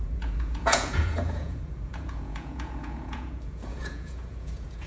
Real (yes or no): no